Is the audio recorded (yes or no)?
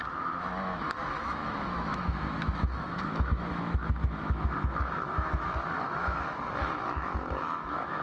no